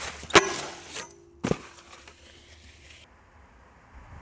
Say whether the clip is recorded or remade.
recorded